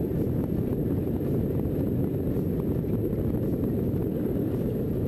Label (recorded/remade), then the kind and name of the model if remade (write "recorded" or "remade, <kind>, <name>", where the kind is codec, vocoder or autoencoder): remade, vocoder, BigVGAN v2